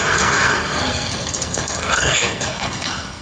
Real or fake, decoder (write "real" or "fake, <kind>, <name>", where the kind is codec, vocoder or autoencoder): fake, codec, SNAC